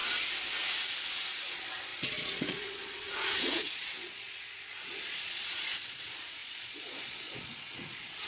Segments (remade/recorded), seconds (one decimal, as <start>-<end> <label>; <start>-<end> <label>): 0.0-1.5 recorded; 1.5-8.3 remade